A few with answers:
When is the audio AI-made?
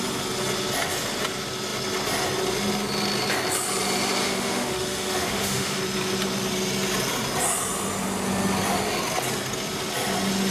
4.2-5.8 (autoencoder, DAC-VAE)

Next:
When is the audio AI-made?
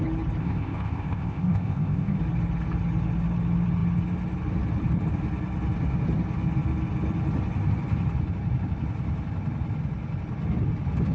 0.4-2.2 (codec, ZipCodec)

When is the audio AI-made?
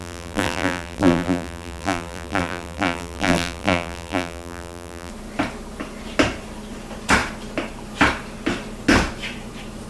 0.0-5.1 (vocoder, BigVGAN v2)